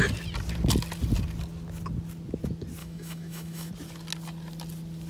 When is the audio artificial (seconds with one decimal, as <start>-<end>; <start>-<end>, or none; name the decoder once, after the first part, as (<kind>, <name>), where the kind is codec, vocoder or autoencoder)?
2.8-3.7 (autoencoder, DAC-VAE)